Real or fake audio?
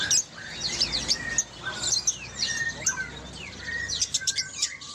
real